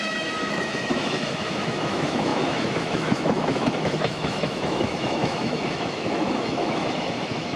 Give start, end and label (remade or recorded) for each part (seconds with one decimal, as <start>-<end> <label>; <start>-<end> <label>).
0.0-7.6 remade